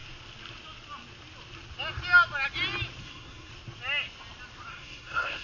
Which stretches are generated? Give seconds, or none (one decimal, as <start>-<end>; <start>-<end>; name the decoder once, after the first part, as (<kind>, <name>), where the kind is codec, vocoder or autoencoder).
3.0-3.5 (codec, SNAC); 4.7-5.4